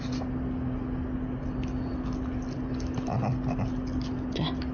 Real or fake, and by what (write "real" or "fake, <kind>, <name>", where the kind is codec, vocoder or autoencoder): real